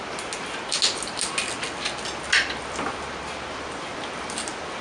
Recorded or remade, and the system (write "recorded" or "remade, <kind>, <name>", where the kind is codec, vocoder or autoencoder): recorded